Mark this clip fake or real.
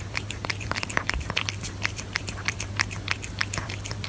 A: fake